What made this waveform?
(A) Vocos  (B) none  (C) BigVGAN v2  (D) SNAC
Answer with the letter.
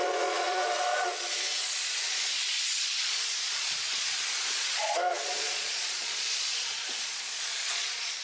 A